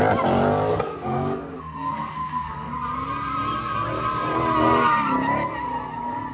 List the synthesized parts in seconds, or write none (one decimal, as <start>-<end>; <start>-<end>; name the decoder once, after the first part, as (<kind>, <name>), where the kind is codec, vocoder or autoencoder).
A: 0.7-2.7 (codec, SNAC)